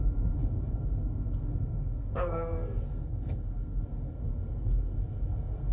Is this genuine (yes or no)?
no